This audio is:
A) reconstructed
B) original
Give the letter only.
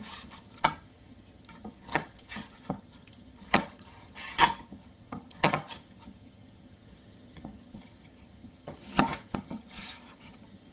A